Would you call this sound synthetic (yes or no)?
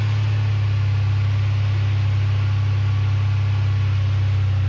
no